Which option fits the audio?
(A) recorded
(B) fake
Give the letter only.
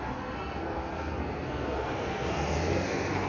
B